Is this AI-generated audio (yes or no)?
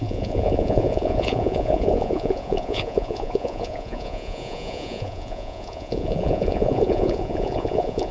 yes